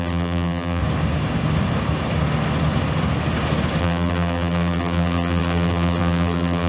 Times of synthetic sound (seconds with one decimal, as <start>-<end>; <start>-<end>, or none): 0.0-0.8; 3.8-6.7